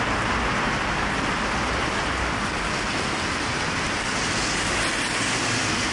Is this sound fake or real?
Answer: real